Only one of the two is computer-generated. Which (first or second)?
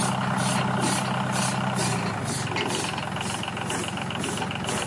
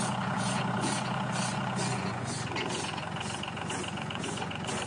second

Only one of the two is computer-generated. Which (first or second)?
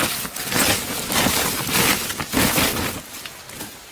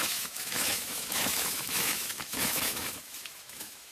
second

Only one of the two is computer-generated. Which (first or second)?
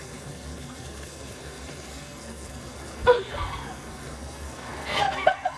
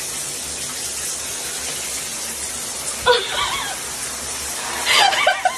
first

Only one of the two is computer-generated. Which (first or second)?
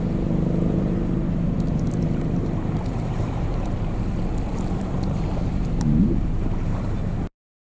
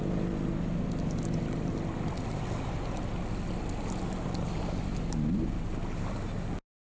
first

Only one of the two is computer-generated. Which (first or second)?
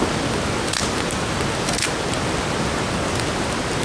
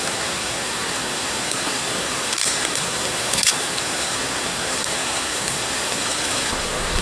second